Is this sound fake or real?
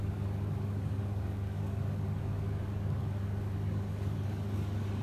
fake